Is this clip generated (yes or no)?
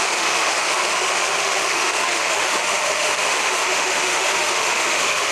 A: yes